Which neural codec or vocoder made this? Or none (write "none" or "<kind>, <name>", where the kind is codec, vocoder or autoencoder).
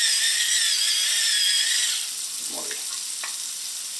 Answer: none